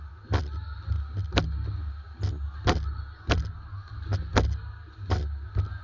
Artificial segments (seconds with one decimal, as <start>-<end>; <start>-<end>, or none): none